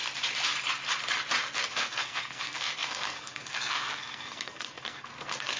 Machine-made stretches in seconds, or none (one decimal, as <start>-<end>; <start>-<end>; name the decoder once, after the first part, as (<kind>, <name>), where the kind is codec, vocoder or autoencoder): 1.7-5.6 (codec, SNAC)